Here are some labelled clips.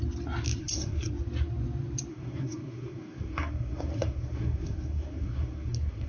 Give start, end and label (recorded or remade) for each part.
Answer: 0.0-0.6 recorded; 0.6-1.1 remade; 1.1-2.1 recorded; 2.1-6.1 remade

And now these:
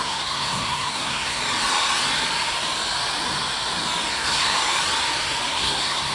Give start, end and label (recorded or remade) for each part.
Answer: 0.0-1.4 remade; 1.4-4.1 recorded; 4.1-4.6 remade; 4.6-5.5 recorded; 5.5-6.1 remade

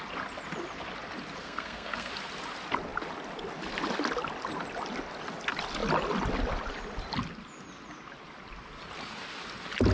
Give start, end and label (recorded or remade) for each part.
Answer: 0.0-1.4 recorded; 1.4-2.1 remade; 2.1-9.9 recorded

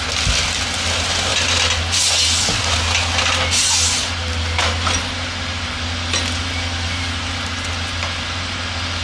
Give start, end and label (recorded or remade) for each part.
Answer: 0.0-9.0 recorded

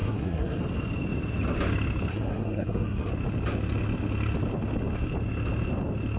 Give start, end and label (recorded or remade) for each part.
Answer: 0.0-0.6 remade; 0.6-2.1 recorded; 2.1-3.1 remade; 3.1-6.2 recorded

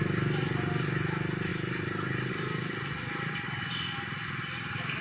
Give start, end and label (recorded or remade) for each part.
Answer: 0.0-5.0 recorded

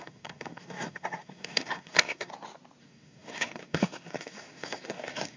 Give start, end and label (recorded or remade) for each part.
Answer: 0.0-2.3 remade; 2.3-2.8 recorded; 2.8-5.4 remade